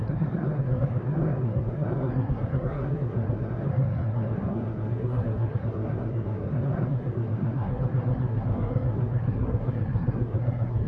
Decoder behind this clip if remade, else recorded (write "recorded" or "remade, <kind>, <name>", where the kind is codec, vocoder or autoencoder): remade, codec, SNAC